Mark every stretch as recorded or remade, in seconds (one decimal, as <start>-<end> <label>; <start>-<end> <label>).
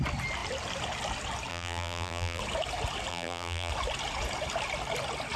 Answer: 0.0-1.5 recorded; 1.5-2.4 remade; 2.4-3.1 recorded; 3.1-3.7 remade; 3.7-5.4 recorded